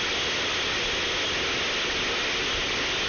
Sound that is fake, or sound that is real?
real